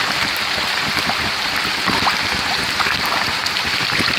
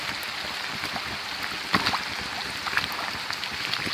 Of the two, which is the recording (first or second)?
second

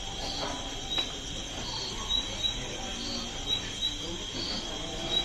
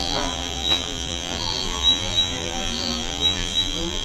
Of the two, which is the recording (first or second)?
first